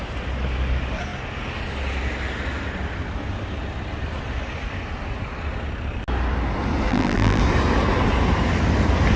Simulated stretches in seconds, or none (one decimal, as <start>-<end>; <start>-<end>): 6.9-7.4